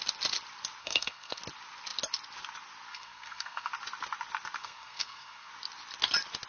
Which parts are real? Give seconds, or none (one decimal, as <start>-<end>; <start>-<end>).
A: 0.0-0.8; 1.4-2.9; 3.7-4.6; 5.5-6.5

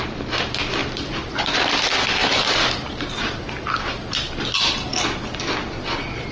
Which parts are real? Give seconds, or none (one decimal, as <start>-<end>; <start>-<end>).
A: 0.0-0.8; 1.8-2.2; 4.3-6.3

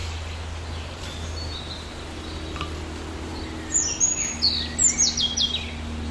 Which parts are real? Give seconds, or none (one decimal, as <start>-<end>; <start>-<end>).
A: 0.0-6.1

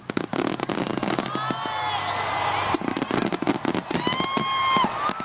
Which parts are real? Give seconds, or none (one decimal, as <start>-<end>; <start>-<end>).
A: 0.0-5.2

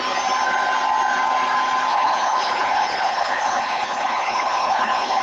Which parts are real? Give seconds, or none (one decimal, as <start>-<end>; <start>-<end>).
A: 0.0-1.9

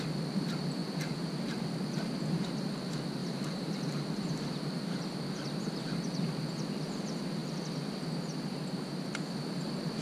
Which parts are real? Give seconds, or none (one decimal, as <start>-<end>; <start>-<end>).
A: 0.0-3.2; 5.0-10.0